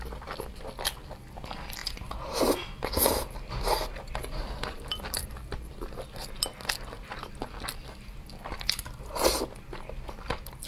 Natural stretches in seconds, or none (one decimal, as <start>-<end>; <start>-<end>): 0.0-10.7